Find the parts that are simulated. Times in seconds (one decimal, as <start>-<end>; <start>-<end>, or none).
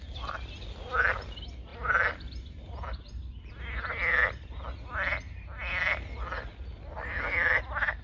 1.7-3.6; 4.1-5.7; 6.5-7.6